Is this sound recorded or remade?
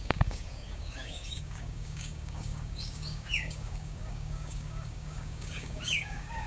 remade